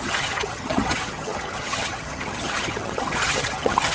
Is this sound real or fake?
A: fake